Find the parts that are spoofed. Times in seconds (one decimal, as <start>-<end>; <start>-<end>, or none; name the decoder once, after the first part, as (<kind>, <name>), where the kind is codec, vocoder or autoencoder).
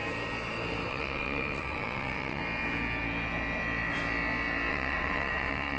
0.9-2.4 (vocoder, WaveNeXt); 4.7-5.8